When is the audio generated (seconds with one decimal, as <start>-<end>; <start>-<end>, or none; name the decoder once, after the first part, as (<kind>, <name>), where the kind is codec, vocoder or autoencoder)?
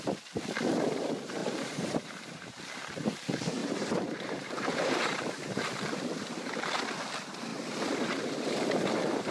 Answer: 1.4-2.6 (vocoder, BigVGAN v2); 3.6-5.7; 7.5-9.3